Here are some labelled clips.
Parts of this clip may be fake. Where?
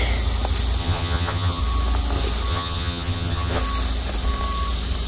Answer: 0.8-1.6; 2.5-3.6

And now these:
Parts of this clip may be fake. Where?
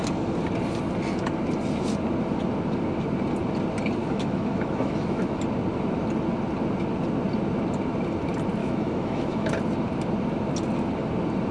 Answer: 4.0-5.4; 8.6-9.5